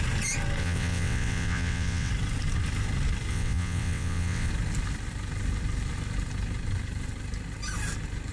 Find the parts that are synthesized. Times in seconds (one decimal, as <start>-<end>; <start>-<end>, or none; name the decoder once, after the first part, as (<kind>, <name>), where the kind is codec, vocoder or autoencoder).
0.6-2.1 (vocoder, WaveNeXt); 3.3-4.5